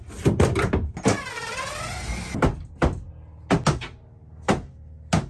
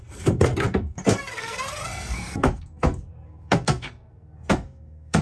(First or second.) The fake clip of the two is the second